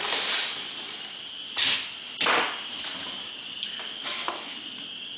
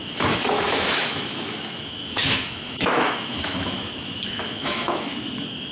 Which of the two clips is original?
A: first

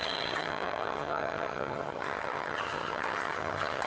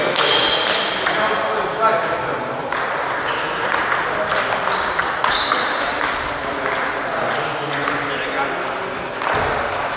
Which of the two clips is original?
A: second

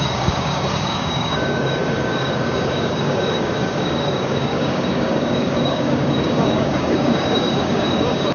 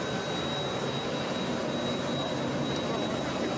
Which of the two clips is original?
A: second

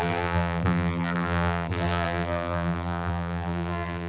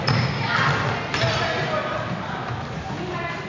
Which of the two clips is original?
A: second